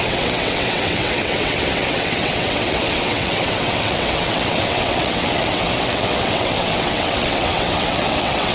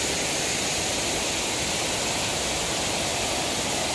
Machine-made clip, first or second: first